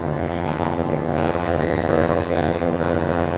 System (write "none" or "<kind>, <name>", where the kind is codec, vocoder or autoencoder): vocoder, HiFi-GAN